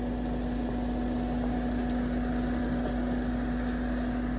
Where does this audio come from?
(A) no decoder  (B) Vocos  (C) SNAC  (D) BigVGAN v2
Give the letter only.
A